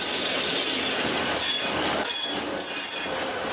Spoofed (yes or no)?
no